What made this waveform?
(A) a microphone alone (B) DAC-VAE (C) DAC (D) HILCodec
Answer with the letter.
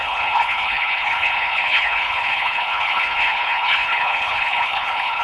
D